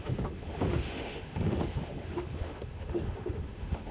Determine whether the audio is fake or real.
fake